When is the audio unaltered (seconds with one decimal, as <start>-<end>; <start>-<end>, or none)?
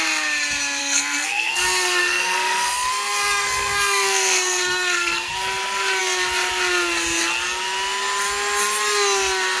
0.0-0.8; 5.3-9.6